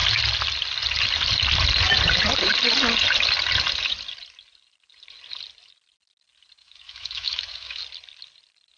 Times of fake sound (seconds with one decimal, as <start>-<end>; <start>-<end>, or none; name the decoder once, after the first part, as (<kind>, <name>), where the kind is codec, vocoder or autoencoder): 6.6-7.8 (autoencoder, DAC-VAE)